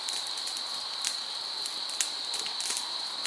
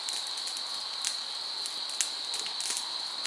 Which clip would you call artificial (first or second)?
first